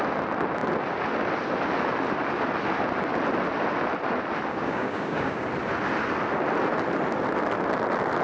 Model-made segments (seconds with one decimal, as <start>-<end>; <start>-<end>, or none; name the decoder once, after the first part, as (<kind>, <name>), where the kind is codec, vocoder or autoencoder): 4.5-5.5 (codec, DAC)